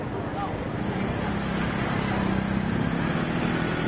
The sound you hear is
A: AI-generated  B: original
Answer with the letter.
B